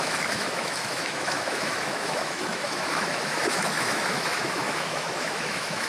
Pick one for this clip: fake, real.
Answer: fake